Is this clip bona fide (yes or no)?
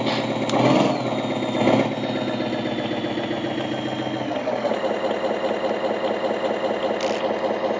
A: yes